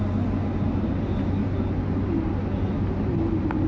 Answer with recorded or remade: recorded